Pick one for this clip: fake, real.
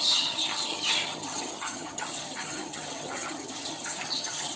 fake